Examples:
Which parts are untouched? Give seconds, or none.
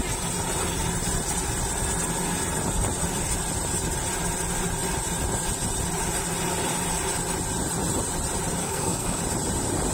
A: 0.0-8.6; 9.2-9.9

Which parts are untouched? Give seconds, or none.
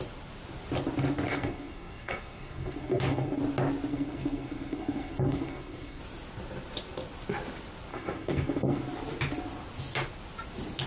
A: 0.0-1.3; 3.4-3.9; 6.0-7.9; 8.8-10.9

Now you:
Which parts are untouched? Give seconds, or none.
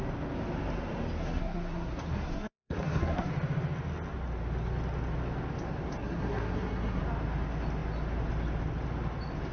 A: 0.0-1.2; 3.3-6.0; 7.0-9.5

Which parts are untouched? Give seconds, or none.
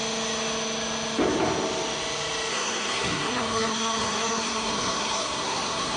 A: 0.0-2.5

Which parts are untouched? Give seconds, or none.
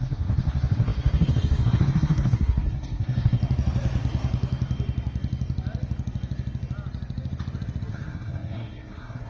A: 3.4-7.9